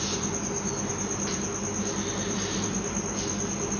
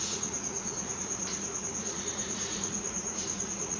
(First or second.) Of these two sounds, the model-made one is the second